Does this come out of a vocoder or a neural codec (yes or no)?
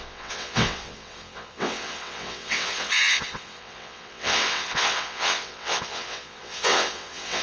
yes